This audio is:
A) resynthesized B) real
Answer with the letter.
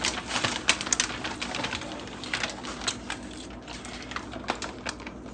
B